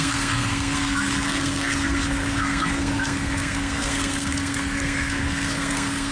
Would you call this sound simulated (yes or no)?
yes